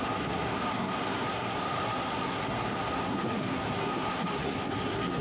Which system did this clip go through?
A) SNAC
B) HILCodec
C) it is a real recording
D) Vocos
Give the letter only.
A